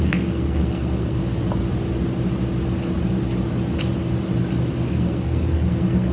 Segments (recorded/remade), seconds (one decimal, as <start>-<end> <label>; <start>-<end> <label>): 0.0-1.2 remade; 1.2-4.9 recorded; 4.9-6.1 remade